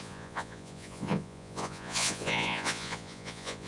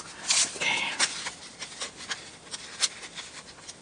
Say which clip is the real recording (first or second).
second